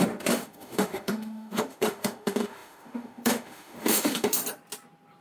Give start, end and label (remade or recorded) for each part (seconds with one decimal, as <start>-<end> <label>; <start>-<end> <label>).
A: 0.0-4.4 remade; 4.4-5.2 recorded